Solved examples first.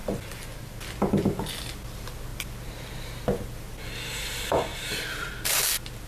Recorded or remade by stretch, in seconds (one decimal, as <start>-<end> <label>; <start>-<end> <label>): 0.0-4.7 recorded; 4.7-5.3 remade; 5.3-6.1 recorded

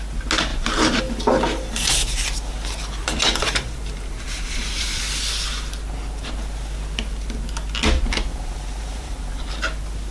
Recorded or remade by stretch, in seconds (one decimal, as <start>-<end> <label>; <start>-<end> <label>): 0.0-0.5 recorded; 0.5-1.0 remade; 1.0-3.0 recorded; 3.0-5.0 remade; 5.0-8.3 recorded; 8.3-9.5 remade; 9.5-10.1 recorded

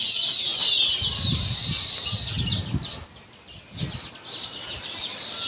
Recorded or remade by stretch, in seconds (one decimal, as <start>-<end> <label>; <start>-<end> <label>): 0.0-0.5 recorded; 0.5-3.8 remade; 3.8-5.5 recorded